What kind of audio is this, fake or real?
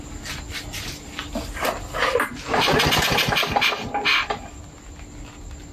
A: real